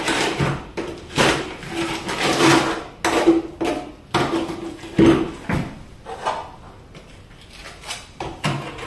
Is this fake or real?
real